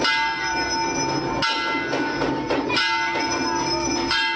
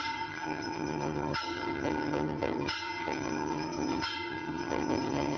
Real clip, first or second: first